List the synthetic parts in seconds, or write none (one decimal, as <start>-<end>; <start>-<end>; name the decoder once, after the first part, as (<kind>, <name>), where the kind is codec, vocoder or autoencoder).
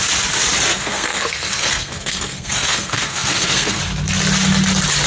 0.7-3.8 (codec, SNAC)